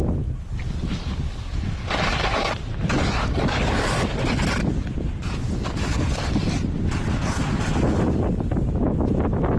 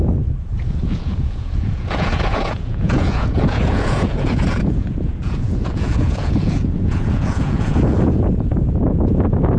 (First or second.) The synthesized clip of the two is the second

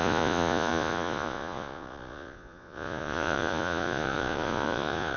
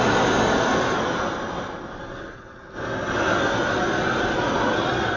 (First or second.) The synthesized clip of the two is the first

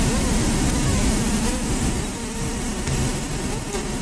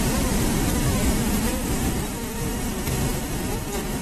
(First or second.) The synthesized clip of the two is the second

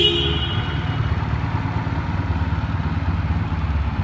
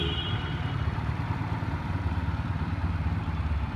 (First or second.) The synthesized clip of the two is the second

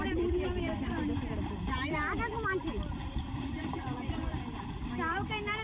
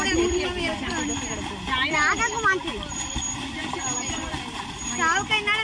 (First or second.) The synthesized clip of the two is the first